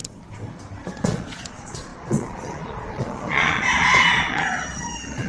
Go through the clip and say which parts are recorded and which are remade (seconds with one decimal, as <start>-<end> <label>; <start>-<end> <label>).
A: 0.0-0.9 recorded; 0.9-5.3 remade